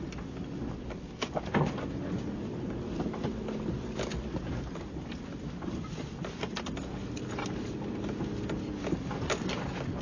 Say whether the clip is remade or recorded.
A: recorded